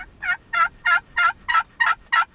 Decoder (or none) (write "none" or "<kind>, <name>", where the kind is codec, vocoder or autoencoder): none